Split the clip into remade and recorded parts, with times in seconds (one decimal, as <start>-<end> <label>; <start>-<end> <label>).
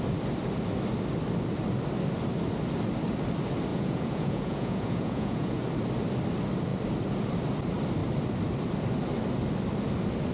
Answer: 0.0-3.7 recorded; 3.7-5.6 remade; 5.6-10.3 recorded